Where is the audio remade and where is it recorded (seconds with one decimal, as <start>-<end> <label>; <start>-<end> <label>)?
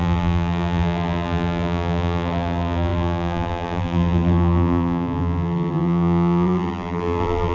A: 0.0-7.5 remade